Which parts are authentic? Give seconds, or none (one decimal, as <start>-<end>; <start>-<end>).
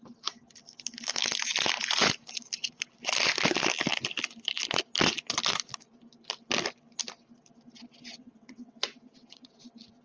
0.0-8.2; 9.5-10.0